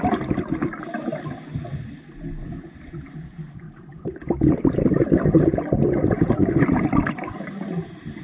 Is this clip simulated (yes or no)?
no